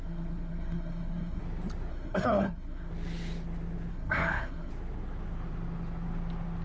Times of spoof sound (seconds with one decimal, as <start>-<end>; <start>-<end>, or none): 0.0-1.4; 1.9-2.9; 3.9-4.7